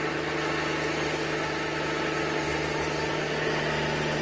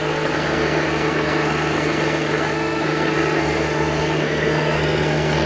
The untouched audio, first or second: first